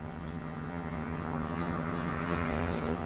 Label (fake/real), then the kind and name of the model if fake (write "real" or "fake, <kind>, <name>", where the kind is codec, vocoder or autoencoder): fake, vocoder, HiFi-GAN